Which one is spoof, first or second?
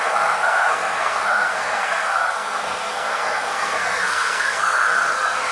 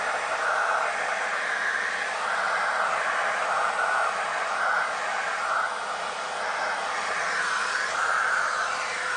first